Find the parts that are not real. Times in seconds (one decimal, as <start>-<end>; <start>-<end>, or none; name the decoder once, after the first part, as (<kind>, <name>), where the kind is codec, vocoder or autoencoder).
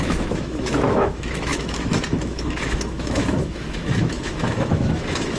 0.0-5.4 (autoencoder, DAC-VAE)